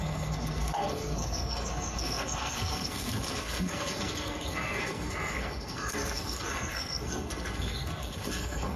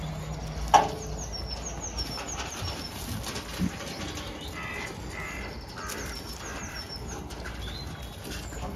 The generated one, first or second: first